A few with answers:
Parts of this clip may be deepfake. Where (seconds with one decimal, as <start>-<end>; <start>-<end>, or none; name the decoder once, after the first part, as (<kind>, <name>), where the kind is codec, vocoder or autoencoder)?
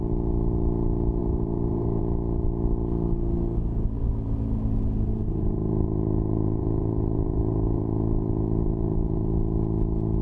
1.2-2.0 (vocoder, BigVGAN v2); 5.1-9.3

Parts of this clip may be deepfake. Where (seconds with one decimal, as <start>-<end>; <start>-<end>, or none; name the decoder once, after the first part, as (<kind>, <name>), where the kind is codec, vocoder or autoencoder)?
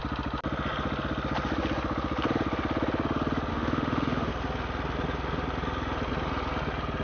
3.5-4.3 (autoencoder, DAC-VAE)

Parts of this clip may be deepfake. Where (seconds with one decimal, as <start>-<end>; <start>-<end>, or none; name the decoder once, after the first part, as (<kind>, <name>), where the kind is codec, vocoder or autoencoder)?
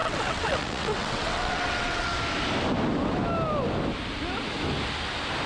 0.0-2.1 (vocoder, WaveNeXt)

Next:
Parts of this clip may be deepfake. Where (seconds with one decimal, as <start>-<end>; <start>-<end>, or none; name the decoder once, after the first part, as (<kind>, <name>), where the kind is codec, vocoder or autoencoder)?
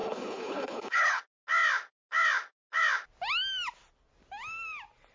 0.0-1.2 (codec, HILCodec)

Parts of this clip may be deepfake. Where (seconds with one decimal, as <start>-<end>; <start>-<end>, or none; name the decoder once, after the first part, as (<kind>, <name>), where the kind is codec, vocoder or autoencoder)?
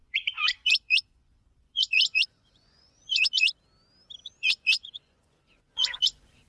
0.0-3.5 (vocoder, Vocos); 4.2-6.5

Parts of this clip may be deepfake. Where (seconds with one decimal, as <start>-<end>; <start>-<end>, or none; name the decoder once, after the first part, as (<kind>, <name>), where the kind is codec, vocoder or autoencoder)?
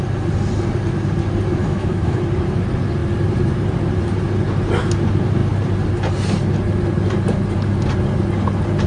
1.6-2.2 (autoencoder, DAC-VAE)